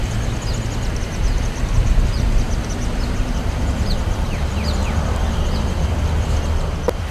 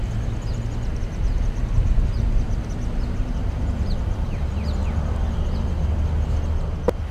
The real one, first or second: second